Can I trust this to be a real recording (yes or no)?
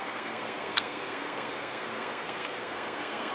no